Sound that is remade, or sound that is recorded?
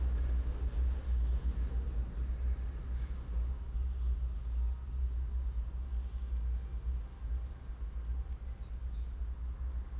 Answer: recorded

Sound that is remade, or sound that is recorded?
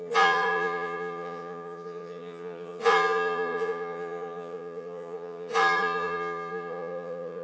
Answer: remade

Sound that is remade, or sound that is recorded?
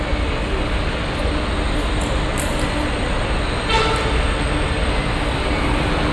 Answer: recorded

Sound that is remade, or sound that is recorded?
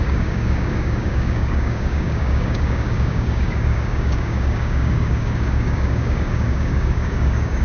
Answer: remade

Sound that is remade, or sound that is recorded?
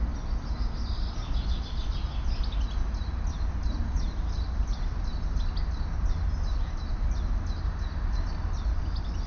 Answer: recorded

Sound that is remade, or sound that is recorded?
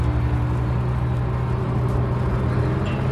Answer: recorded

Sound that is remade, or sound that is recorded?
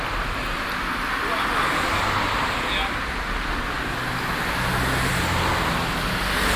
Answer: recorded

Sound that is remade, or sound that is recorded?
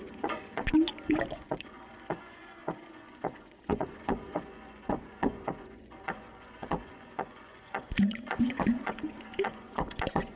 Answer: remade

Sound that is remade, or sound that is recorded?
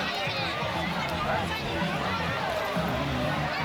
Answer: recorded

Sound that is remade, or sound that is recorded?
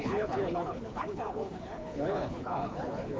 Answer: remade